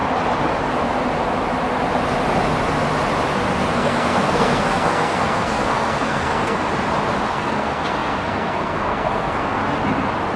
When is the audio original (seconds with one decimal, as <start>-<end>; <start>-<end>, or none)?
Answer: 0.0-3.7; 6.6-7.3; 9.6-10.4